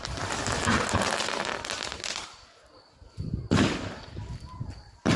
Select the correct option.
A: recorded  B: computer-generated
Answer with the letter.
A